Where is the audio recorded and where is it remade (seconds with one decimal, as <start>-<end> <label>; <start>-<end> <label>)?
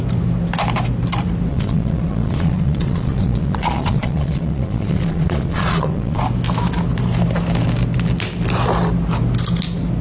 0.0-1.5 recorded; 1.5-6.2 remade; 6.2-10.0 recorded